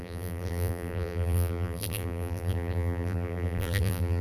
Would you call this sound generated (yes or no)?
yes